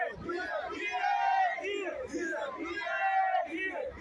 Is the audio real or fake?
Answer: real